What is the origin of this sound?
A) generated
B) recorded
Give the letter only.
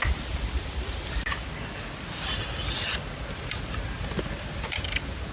B